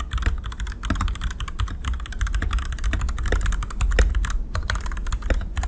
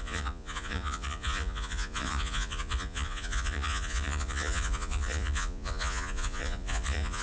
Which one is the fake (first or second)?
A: second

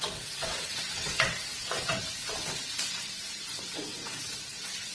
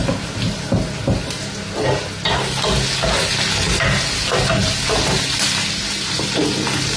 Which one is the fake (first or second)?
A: first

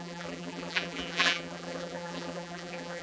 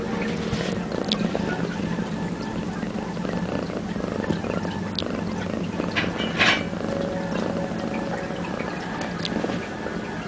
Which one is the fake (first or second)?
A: first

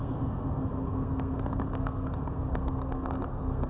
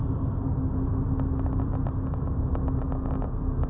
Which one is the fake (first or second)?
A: first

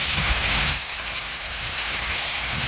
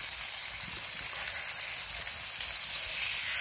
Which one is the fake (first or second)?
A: first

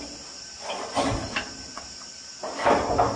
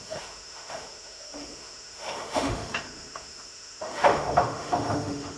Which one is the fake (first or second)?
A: second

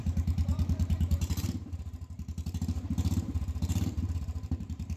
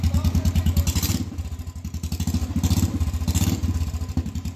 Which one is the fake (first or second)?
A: first